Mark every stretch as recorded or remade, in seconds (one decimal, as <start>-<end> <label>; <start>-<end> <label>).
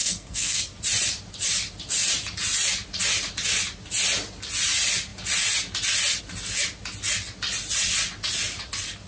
0.0-0.6 remade; 0.6-9.1 recorded